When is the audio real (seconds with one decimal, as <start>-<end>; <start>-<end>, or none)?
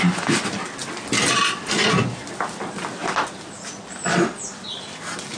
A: 0.0-5.4